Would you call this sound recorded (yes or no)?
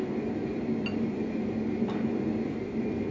yes